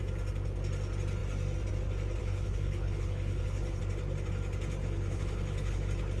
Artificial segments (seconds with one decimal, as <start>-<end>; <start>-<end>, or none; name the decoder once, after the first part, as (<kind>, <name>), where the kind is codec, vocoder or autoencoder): 2.2-3.8 (codec, HILCodec); 4.8-5.8